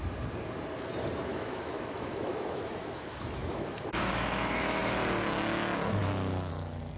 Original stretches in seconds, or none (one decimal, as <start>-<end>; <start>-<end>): 0.0-1.3; 4.8-6.0; 6.5-7.0